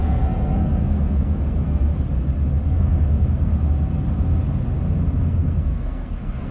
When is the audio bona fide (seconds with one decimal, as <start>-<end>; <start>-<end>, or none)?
1.9-2.7; 3.5-5.2